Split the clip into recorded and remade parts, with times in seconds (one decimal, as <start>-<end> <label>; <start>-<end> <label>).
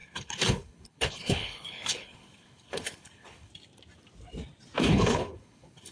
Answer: 0.0-3.5 remade; 3.5-4.8 recorded; 4.8-5.9 remade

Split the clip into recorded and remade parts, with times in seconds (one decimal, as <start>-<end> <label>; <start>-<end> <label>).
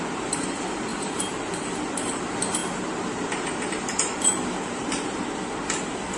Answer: 0.0-6.2 recorded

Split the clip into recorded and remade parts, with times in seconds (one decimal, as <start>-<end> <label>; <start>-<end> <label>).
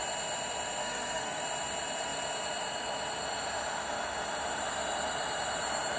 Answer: 0.0-0.8 recorded; 0.8-1.4 remade; 1.4-6.0 recorded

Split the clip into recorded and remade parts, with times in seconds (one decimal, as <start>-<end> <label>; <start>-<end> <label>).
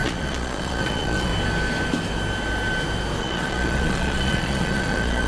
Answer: 0.0-1.3 remade; 1.3-3.2 recorded; 3.2-5.3 remade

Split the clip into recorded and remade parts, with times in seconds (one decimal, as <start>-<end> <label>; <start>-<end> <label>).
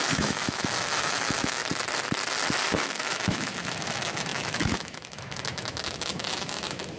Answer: 0.0-1.6 remade; 1.6-2.7 recorded; 2.7-7.0 remade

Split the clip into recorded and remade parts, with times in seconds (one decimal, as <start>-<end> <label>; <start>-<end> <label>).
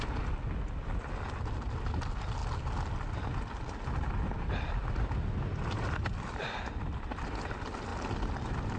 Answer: 0.0-8.8 recorded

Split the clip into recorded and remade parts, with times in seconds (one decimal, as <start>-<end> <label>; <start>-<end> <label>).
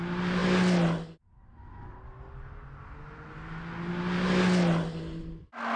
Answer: 0.0-5.8 recorded